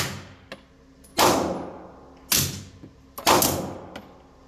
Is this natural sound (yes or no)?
yes